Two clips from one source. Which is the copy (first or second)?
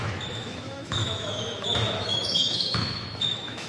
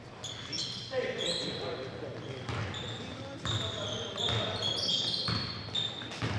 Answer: first